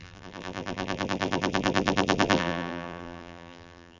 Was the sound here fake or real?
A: fake